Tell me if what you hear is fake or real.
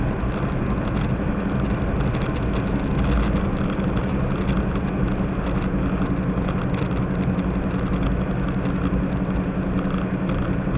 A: real